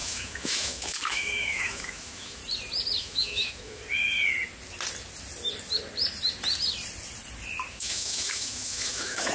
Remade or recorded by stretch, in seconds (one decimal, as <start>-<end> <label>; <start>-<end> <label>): 0.0-2.4 remade; 2.4-3.0 recorded; 3.0-3.8 remade; 3.8-7.7 recorded; 7.7-9.3 remade